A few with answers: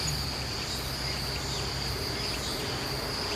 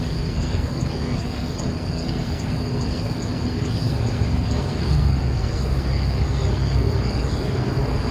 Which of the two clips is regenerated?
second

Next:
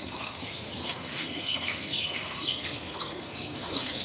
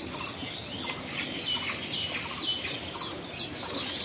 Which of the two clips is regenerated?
first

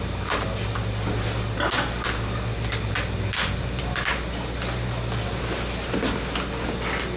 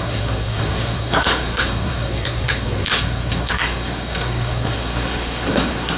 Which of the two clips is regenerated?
second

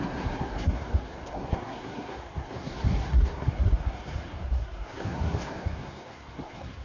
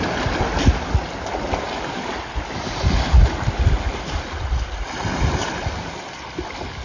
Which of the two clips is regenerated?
first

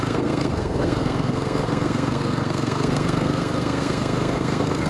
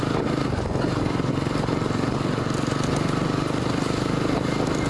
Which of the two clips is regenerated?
first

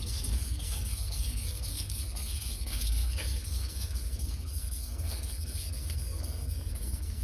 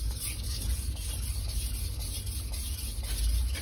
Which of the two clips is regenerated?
first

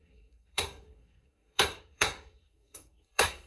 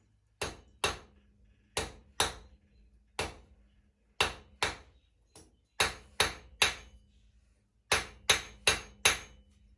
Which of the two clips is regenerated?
first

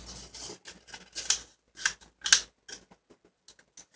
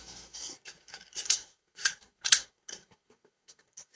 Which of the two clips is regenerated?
second